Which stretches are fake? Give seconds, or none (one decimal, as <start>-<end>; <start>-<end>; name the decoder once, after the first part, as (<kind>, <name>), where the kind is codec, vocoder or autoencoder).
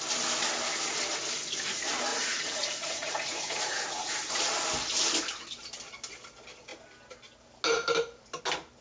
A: 2.1-4.1 (vocoder, Vocos)